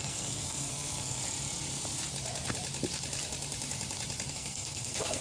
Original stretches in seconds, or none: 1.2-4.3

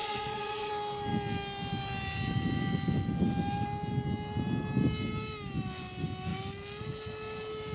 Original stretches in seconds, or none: 0.7-7.7

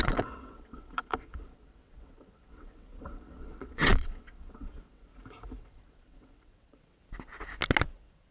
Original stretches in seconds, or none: 5.1-5.6; 7.0-7.8

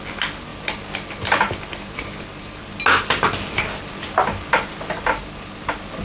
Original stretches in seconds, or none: 0.0-6.0